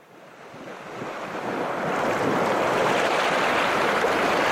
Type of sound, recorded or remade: recorded